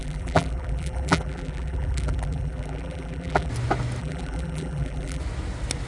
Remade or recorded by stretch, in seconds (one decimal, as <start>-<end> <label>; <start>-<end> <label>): 0.0-3.5 remade; 3.5-4.0 recorded; 4.0-5.2 remade; 5.2-5.9 recorded